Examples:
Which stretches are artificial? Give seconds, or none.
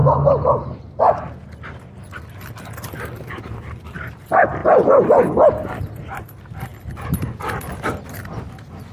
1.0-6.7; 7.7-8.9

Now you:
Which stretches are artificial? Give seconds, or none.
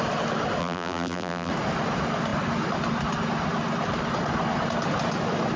0.6-1.5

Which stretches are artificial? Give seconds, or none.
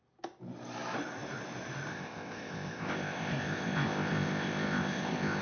1.9-5.4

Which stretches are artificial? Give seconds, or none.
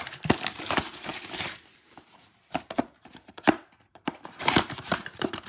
0.0-5.5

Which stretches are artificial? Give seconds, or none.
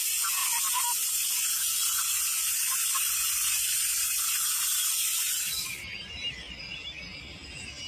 none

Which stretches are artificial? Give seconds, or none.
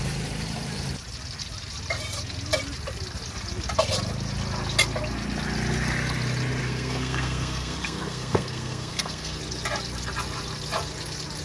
6.6-9.4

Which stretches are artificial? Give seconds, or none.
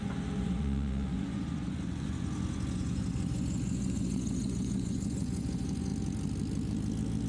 0.0-5.9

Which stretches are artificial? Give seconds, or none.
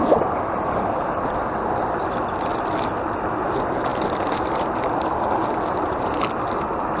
none